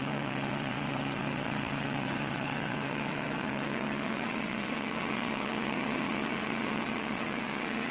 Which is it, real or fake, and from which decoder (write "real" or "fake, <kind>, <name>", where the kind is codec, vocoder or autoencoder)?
fake, vocoder, WaveNeXt